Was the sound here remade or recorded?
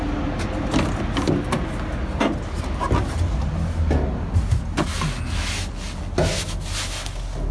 recorded